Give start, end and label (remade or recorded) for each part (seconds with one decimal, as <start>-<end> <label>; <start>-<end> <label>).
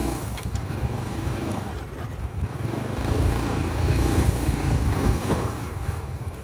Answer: 0.0-1.7 remade; 1.7-2.2 recorded; 2.2-6.4 remade